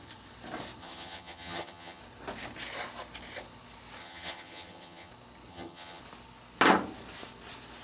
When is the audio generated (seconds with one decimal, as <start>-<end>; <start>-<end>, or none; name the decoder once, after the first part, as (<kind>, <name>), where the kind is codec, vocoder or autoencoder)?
0.8-2.0 (vocoder, HiFi-GAN); 4.0-5.1; 5.5-6.0